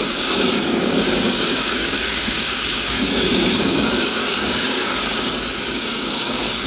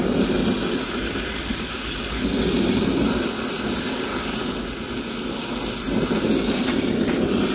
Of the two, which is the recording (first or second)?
second